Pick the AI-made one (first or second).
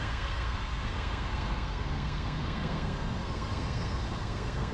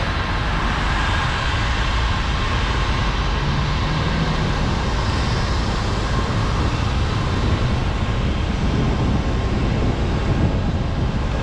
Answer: first